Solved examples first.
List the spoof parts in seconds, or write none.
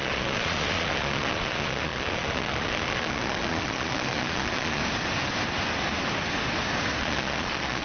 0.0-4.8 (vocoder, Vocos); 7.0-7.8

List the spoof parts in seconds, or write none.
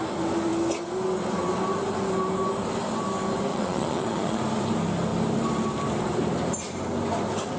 3.5-4.4 (vocoder, Vocos)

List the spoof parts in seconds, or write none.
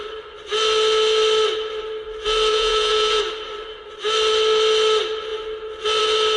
2.5-3.2 (vocoder, Vocos)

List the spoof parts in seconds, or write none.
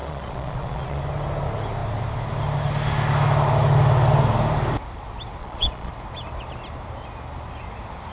0.0-1.0 (vocoder, Vocos); 5.4-5.9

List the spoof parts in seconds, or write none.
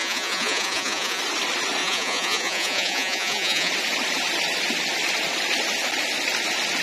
0.0-1.2 (vocoder, Vocos); 1.8-3.7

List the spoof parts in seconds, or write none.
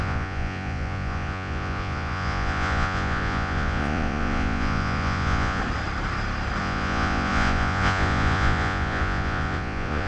0.0-5.6 (vocoder, Vocos); 6.6-10.1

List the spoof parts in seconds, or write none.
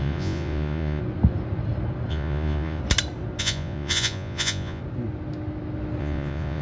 0.0-1.0 (vocoder, Vocos); 2.1-2.8; 3.4-4.8; 6.0-6.6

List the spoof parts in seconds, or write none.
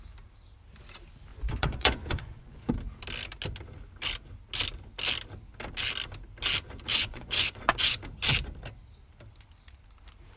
1.3-2.7 (vocoder, Vocos); 7.0-8.0